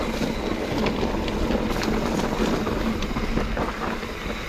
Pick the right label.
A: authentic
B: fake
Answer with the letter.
A